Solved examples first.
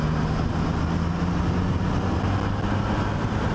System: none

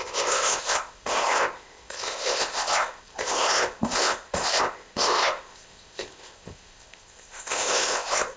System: codec, ZipCodec